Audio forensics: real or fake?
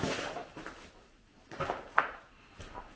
real